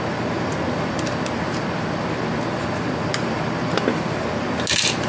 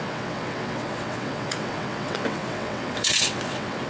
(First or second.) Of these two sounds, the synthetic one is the second